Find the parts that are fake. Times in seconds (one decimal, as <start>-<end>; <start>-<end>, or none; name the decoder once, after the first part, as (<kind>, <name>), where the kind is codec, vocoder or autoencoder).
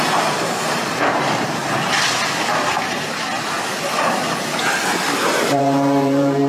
0.0-1.6 (vocoder, BigVGAN v2); 5.5-6.5